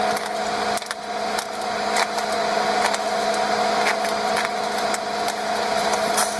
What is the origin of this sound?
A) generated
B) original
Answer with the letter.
B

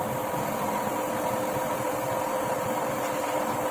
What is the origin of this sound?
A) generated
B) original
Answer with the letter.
B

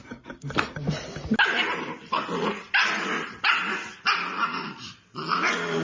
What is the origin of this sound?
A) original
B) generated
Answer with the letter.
A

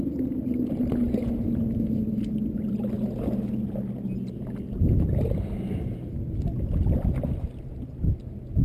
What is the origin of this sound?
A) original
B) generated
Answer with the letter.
A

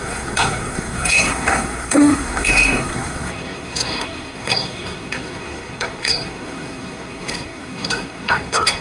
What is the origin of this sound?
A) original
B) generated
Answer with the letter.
B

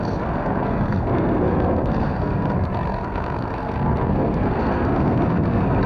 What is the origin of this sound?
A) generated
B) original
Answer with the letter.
A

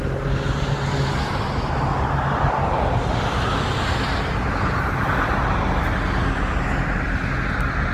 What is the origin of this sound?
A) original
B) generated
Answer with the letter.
A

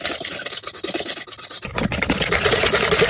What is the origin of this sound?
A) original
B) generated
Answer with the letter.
A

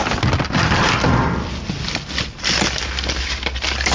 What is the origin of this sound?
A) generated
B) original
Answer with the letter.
B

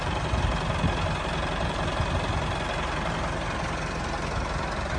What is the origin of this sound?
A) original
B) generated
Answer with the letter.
A